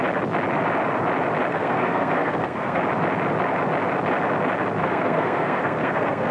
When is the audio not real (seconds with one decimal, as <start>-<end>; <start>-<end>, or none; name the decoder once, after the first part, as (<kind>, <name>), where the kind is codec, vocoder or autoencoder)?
1.5-2.8 (codec, SNAC); 4.8-6.3